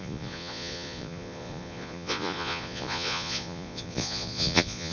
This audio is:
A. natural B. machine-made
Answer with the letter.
B